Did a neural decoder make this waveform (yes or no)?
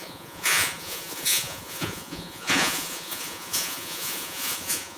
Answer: yes